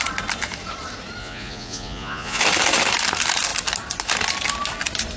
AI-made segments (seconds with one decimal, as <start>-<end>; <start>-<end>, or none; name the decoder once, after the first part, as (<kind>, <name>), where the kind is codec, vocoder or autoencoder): 1.2-2.4 (vocoder, Vocos)